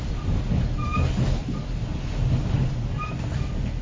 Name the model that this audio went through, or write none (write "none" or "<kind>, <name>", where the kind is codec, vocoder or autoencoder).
none